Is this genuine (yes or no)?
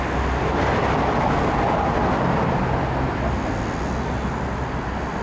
yes